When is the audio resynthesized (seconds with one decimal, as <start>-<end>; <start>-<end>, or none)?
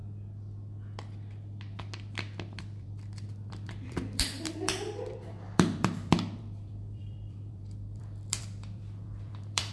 2.6-9.7